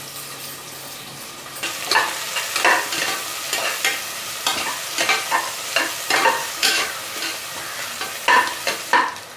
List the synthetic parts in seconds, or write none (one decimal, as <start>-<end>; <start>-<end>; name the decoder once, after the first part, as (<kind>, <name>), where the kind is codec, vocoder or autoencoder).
6.4-6.9 (autoencoder, DAC-VAE)